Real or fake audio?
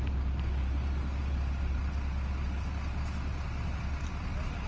real